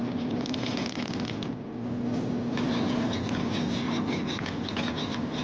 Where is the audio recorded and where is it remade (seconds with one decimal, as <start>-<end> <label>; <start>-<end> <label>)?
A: 0.0-5.4 recorded